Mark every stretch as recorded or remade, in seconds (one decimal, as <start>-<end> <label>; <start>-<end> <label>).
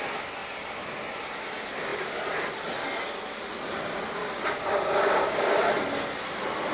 0.0-4.2 recorded; 4.2-5.7 remade; 5.7-6.7 recorded